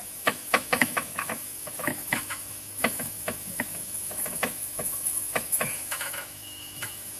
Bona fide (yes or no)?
no